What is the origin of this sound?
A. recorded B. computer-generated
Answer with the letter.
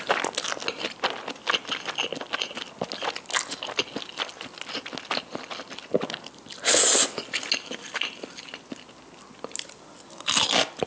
A